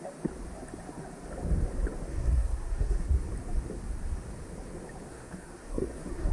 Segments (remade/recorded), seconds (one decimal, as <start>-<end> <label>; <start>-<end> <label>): 0.0-2.1 recorded; 2.1-3.1 remade; 3.1-5.1 recorded; 5.1-6.3 remade